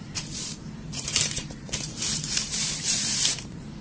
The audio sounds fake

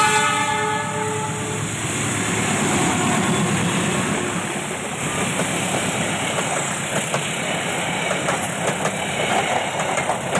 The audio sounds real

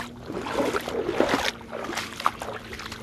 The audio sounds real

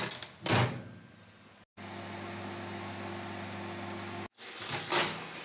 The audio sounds real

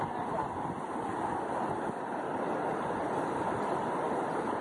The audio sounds real